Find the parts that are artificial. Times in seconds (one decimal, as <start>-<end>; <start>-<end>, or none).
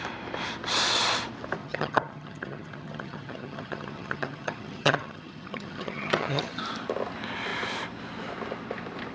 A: 1.6-6.6